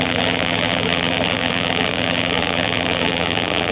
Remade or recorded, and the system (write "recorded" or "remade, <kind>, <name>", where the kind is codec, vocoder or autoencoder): remade, vocoder, BigVGAN v2